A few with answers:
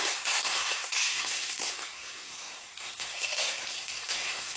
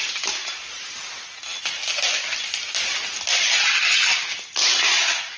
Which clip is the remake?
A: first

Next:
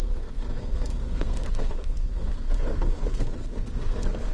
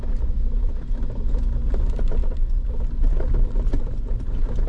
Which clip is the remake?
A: first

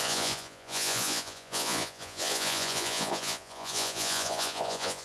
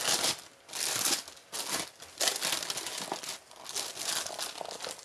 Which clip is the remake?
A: first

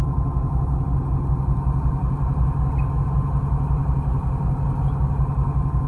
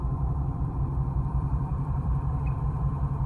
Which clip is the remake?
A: second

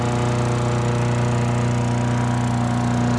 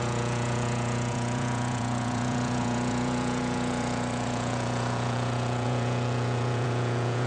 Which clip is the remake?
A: second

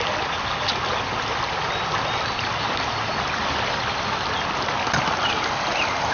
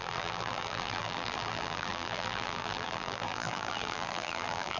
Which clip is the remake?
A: second